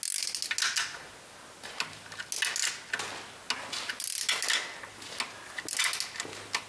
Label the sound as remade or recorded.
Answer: recorded